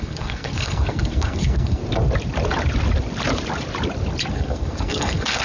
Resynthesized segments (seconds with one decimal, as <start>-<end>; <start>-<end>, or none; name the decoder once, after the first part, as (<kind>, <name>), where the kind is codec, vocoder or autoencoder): 0.0-1.8 (codec, SNAC); 4.3-5.4